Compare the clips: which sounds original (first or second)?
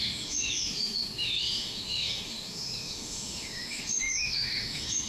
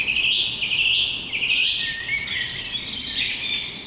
second